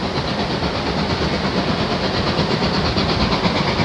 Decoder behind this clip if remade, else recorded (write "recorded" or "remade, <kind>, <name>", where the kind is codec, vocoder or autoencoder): recorded